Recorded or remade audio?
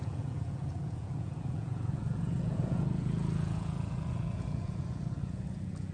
remade